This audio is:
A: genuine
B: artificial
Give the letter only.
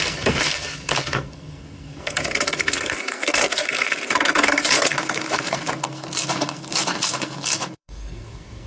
B